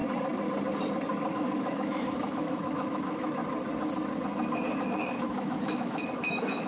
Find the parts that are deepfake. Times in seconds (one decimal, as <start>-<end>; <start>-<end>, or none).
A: 1.3-3.4; 4.7-6.7